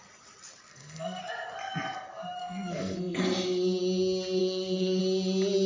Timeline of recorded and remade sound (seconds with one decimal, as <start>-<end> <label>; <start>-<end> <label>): 0.0-0.7 recorded; 0.7-1.2 remade; 1.2-2.4 recorded; 2.4-3.2 remade; 3.2-4.4 recorded; 4.4-5.0 remade; 5.0-5.7 recorded